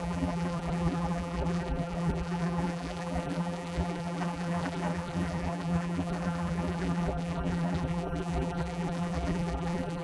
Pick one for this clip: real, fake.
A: fake